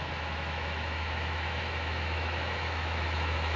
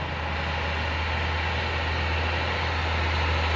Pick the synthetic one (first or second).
first